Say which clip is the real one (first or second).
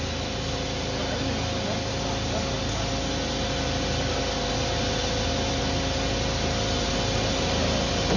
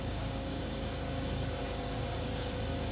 first